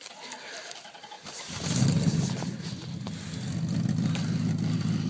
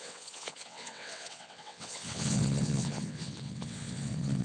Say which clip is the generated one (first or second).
second